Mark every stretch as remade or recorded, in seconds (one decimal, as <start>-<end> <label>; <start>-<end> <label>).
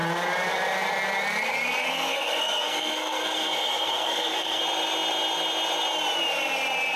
0.0-1.8 recorded; 1.8-4.6 remade; 4.6-7.0 recorded